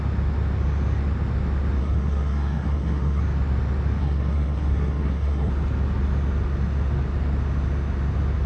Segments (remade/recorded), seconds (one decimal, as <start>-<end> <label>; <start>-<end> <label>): 0.0-1.8 recorded; 1.8-3.2 remade; 3.2-4.0 recorded; 4.0-5.5 remade; 5.5-8.5 recorded